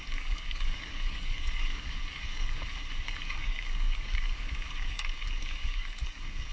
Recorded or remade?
remade